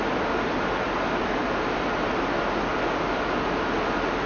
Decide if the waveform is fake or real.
real